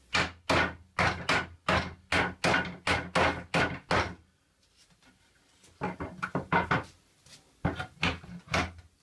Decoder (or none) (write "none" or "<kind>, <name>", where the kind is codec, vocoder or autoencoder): none